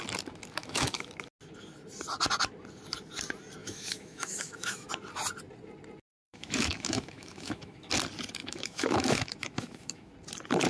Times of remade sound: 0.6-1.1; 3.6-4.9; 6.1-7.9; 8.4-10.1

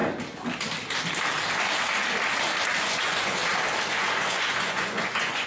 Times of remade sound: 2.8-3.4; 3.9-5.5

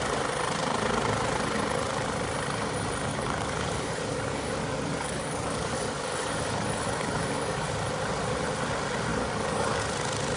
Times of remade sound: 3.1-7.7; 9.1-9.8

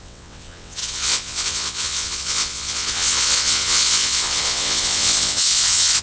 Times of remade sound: 0.0-6.0